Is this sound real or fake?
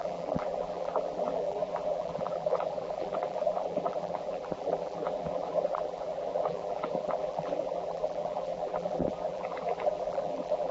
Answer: fake